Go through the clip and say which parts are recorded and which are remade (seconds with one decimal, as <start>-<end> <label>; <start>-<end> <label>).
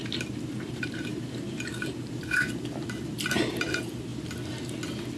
0.0-4.1 remade; 4.1-5.2 recorded